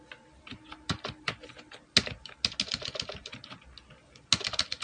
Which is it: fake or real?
real